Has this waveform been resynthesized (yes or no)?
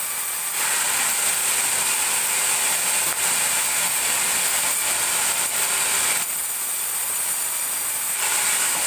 no